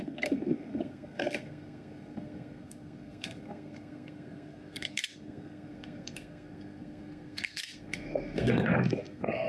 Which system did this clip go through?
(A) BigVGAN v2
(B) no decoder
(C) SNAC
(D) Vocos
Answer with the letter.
C